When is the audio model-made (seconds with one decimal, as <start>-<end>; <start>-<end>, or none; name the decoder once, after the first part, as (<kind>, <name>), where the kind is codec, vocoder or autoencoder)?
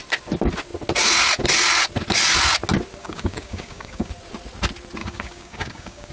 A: 3.0-4.1 (codec, DAC); 5.0-6.1